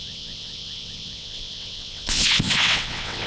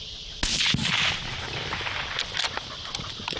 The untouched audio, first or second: second